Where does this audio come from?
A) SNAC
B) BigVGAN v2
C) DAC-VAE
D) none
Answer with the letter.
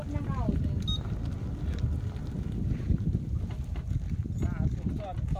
D